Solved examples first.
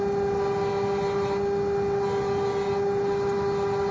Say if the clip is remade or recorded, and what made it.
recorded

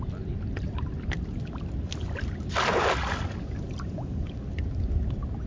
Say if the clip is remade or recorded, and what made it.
recorded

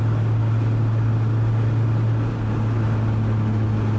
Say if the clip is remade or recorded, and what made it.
recorded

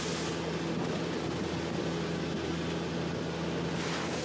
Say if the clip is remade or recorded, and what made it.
recorded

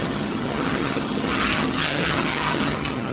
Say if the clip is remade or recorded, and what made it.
remade, vocoder, HiFi-GAN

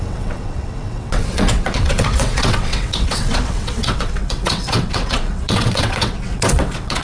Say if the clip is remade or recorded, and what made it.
remade, vocoder, WaveNeXt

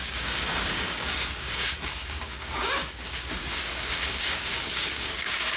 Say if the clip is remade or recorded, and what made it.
remade, codec, DAC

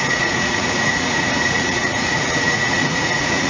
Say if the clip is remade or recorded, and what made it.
remade, vocoder, Vocos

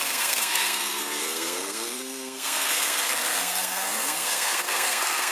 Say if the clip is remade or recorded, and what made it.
remade, codec, SNAC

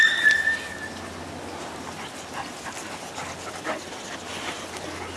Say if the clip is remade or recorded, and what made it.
recorded